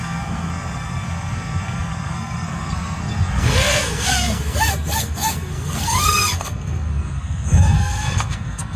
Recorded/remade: remade